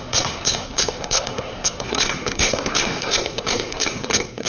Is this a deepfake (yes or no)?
yes